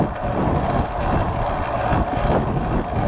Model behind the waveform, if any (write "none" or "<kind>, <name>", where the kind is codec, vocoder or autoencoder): none